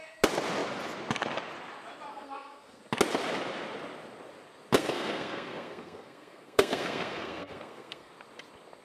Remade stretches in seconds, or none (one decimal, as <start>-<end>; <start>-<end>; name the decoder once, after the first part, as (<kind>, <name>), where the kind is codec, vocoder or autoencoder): 2.1-2.8 (codec, SNAC); 4.8-8.1